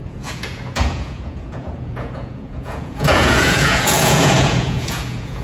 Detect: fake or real fake